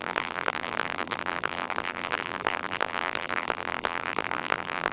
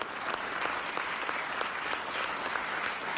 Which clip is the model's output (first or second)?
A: first